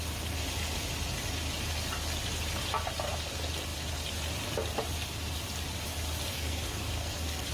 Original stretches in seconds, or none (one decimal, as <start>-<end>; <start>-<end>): 0.0-6.3